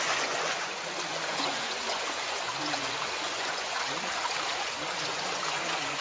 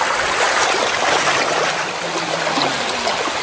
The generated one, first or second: first